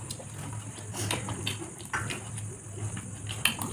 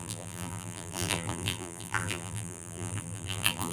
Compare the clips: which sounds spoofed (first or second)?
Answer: second